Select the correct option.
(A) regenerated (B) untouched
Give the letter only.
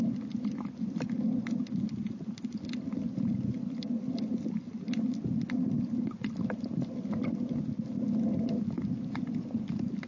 B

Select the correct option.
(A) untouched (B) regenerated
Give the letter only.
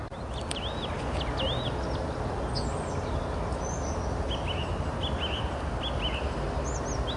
A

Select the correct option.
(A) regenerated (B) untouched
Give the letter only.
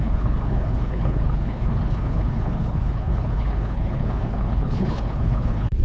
A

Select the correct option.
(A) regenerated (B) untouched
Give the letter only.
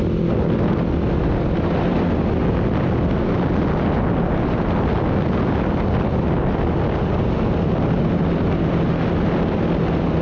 B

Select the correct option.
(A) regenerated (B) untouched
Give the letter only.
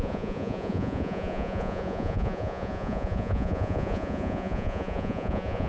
A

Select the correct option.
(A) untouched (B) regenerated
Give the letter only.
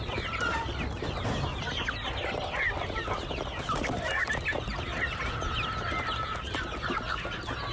A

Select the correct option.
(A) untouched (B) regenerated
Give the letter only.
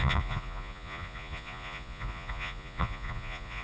B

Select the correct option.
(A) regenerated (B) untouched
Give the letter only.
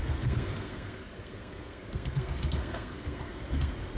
A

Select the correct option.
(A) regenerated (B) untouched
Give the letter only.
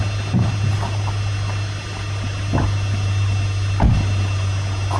B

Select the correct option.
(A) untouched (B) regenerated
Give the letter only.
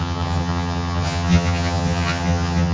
B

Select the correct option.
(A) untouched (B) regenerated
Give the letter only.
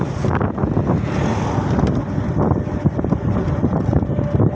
A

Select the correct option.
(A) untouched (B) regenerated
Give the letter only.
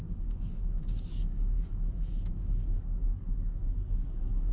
B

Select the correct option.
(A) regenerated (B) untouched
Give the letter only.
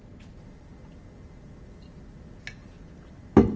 B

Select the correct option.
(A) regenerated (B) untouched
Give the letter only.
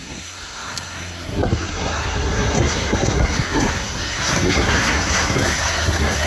A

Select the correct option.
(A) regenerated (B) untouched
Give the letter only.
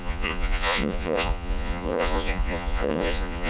A